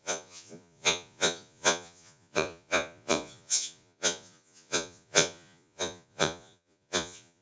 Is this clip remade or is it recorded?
remade